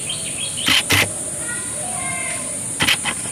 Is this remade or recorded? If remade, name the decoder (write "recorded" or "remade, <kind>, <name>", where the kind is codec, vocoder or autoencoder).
recorded